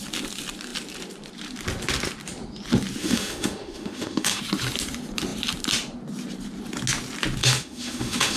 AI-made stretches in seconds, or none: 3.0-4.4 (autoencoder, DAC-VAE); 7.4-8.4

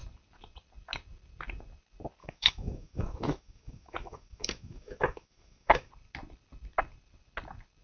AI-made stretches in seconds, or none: 2.2-5.9 (autoencoder, DAC-VAE)

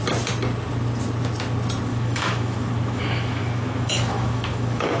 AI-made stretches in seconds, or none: 1.9-5.0 (autoencoder, DAC-VAE)